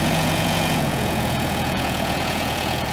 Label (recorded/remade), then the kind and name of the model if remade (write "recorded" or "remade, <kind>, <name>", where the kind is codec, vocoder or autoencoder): remade, vocoder, Vocos